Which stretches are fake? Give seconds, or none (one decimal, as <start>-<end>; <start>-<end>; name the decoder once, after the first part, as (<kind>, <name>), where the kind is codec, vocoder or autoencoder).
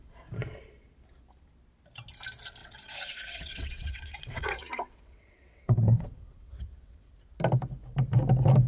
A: 2.6-7.1 (vocoder, WaveNeXt)